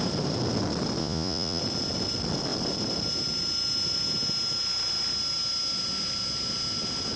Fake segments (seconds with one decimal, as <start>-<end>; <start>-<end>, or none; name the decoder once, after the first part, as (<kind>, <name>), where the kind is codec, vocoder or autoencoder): 1.0-1.6 (vocoder, Vocos)

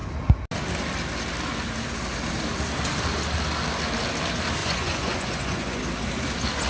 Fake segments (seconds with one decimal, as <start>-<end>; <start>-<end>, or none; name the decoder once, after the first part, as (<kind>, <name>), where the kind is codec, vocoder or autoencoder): 4.6-5.8 (vocoder, Vocos)

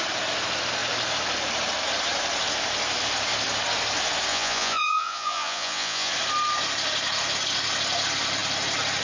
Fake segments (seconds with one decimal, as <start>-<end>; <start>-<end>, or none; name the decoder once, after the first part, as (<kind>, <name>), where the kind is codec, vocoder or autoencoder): 4.3-6.1 (vocoder, Vocos)